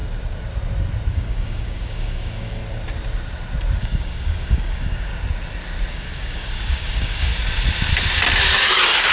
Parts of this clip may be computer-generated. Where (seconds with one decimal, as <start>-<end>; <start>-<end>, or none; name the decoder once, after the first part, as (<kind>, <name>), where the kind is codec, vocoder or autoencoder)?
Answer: 1.1-2.6 (codec, DAC); 3.8-5.1; 5.9-7.3